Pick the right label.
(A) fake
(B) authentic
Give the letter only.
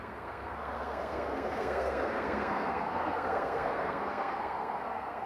A